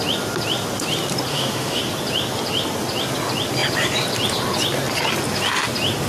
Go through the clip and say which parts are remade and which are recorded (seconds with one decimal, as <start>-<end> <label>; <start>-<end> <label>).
0.0-1.3 recorded; 1.3-1.8 remade; 1.8-6.1 recorded